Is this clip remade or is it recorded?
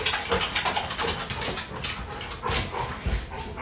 recorded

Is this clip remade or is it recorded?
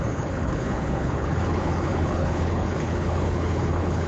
remade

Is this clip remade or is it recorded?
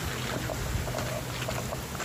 recorded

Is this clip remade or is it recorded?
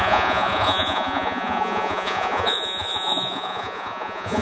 remade